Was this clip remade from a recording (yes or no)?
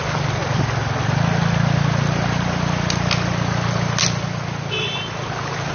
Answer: no